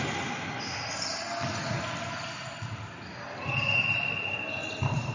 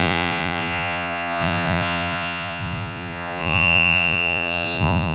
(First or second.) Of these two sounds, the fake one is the second